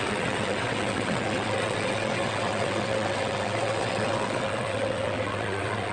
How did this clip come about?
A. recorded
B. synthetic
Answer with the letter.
B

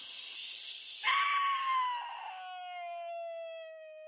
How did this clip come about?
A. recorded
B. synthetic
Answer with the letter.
A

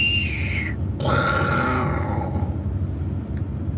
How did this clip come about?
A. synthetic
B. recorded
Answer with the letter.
B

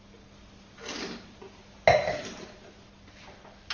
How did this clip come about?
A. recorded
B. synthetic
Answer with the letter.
A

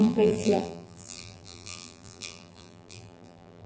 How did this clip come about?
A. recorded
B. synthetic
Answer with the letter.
B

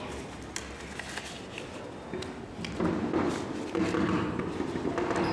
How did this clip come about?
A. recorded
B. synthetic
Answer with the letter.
A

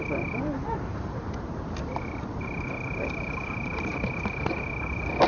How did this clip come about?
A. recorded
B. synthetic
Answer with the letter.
B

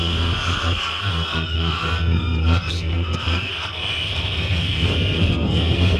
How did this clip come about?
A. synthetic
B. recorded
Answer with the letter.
A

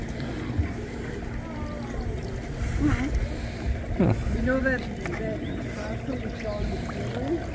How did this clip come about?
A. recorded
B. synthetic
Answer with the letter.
A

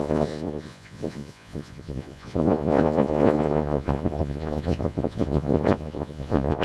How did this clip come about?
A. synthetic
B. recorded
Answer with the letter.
A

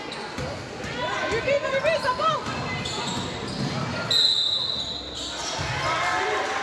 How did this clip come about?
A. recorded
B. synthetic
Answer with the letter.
A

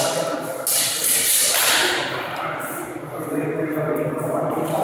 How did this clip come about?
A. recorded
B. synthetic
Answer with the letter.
A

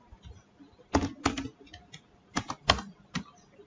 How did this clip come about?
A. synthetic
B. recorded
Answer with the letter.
B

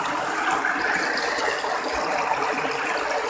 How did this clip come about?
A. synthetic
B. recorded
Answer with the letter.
B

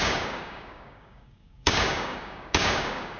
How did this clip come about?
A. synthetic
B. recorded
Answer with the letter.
A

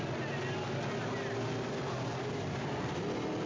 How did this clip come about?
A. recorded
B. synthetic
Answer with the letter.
A